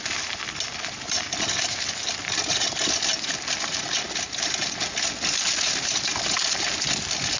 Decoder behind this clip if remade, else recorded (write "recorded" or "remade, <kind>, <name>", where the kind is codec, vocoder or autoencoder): recorded